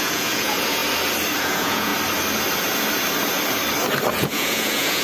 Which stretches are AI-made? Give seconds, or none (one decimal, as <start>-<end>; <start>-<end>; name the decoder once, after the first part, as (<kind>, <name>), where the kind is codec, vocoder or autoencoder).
0.0-0.8 (vocoder, Vocos); 1.4-1.9; 4.1-5.0

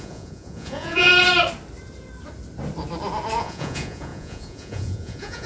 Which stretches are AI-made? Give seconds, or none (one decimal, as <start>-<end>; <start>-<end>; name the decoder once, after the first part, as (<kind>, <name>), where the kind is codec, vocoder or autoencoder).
0.0-1.1 (vocoder, Vocos); 3.4-5.5

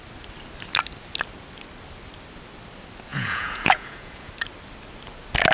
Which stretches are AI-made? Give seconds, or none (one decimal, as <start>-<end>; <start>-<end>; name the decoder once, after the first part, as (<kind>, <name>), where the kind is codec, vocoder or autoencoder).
3.1-4.3 (vocoder, Vocos)

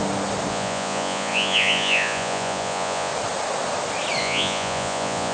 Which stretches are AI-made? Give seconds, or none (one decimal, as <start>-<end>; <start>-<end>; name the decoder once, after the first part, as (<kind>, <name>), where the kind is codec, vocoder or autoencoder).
0.5-3.1 (vocoder, Vocos); 4.2-5.3

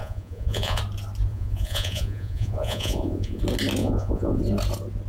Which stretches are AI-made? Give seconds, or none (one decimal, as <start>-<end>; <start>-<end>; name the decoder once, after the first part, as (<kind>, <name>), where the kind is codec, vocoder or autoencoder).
0.0-0.8 (vocoder, Vocos); 1.3-3.4; 3.8-4.4